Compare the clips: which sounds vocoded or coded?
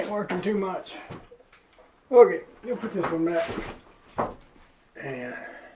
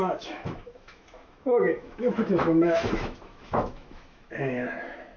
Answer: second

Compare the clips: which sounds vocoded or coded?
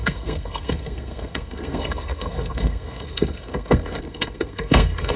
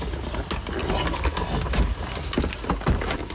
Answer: first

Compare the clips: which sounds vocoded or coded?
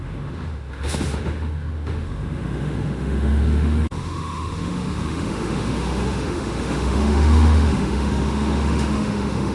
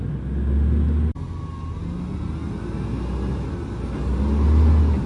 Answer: first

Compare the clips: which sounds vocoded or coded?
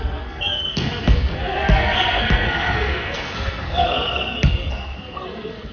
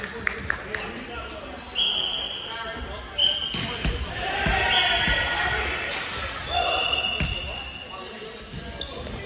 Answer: first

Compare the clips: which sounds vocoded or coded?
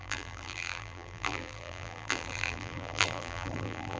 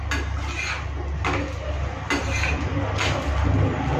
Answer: first